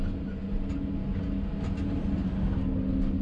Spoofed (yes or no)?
no